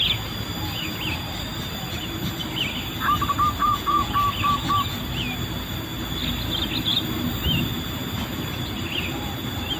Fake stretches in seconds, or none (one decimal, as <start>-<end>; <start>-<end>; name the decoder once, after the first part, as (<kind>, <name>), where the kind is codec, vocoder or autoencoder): 3.6-4.1 (vocoder, Vocos)